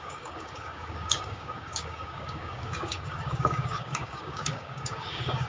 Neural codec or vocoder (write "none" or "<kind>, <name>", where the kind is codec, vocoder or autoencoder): codec, DAC